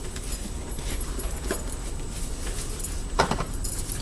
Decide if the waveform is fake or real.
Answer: real